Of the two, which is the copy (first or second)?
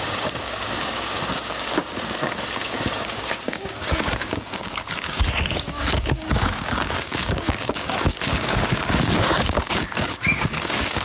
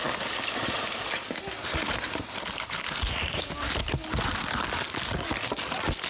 first